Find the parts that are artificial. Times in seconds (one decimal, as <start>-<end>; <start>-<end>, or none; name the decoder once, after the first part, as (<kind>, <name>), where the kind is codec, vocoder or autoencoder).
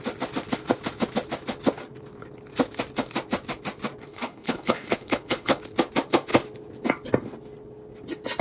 4.1-5.6 (codec, HILCodec)